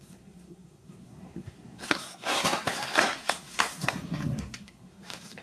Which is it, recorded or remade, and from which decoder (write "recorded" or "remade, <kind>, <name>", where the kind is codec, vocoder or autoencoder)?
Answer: remade, codec, SNAC